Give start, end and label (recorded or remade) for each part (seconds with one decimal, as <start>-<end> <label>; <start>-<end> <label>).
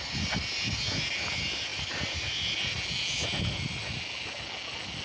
0.0-5.0 recorded